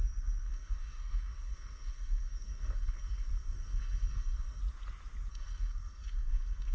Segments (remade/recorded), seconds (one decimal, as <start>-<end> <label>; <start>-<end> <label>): 0.0-4.6 remade; 4.6-5.3 recorded; 5.3-6.7 remade